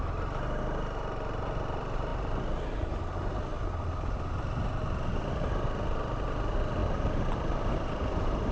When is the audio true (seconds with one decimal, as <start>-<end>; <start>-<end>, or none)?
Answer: 0.0-8.5